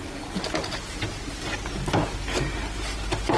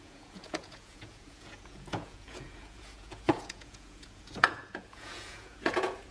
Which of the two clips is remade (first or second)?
second